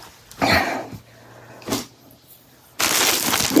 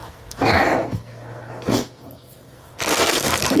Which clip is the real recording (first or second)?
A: first